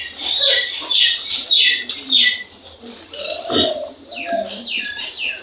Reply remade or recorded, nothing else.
remade